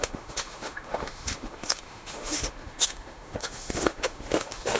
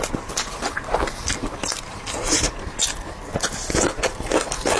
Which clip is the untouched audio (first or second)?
second